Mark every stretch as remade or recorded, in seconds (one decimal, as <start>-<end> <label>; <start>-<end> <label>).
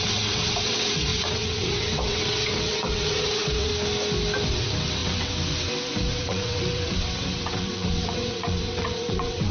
0.0-3.7 remade; 3.7-4.5 recorded; 4.5-9.5 remade